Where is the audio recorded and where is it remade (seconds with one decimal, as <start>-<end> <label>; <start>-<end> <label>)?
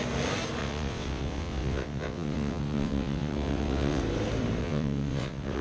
0.0-0.6 recorded; 0.6-4.0 remade; 4.0-4.6 recorded; 4.6-5.6 remade